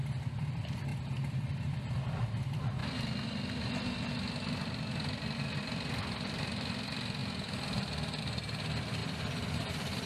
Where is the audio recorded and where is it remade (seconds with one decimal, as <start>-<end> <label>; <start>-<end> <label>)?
0.0-2.8 remade; 2.8-5.6 recorded; 5.6-7.2 remade; 7.2-8.2 recorded; 8.2-10.1 remade